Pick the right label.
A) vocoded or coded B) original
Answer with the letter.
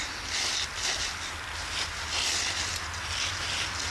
B